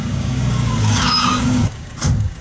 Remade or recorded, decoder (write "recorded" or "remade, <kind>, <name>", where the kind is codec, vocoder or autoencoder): remade, codec, DAC